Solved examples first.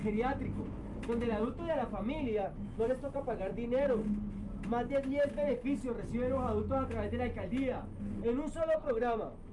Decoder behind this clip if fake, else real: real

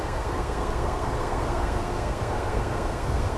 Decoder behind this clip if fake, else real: fake, codec, SNAC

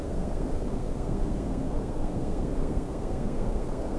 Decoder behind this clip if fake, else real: fake, codec, SNAC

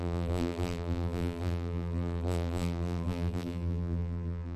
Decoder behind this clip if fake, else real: fake, vocoder, BigVGAN v2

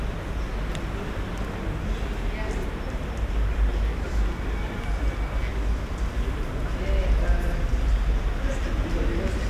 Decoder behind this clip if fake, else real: real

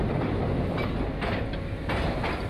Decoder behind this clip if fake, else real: real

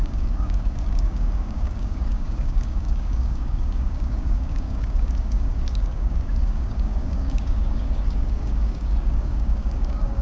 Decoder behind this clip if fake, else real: fake, codec, DAC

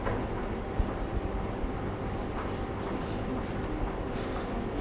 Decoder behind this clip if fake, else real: real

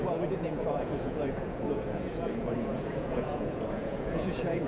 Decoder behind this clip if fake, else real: fake, vocoder, Vocos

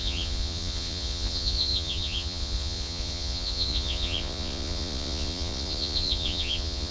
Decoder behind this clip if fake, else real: fake, vocoder, Vocos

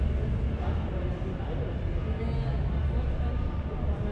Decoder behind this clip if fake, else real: real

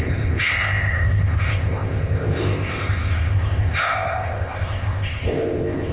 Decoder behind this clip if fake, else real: fake, codec, ZipCodec